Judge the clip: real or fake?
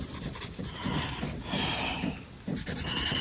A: real